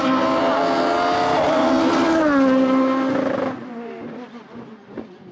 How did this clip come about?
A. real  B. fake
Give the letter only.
A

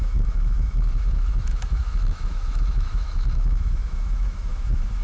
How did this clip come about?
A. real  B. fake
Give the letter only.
B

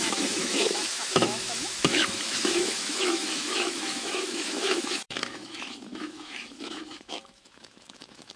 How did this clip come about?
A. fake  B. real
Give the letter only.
A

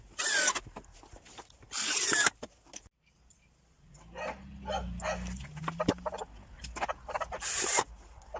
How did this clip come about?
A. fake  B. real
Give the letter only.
B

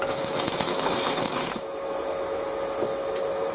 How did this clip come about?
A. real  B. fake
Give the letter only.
B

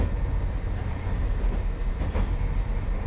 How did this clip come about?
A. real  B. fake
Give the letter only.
A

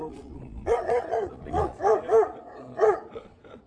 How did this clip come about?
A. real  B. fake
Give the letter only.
B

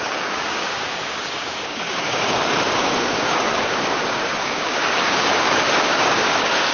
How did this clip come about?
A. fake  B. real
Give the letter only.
A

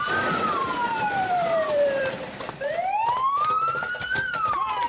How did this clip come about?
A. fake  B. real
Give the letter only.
A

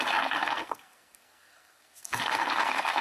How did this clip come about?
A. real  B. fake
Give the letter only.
B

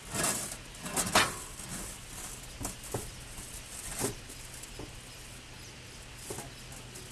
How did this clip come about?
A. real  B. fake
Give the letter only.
A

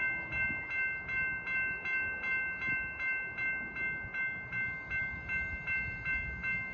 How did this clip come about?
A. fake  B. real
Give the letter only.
B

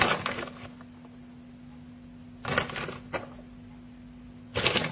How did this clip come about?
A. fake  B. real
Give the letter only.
B